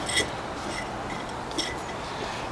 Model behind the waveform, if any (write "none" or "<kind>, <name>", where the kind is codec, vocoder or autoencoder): none